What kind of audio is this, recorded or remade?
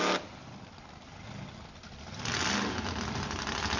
recorded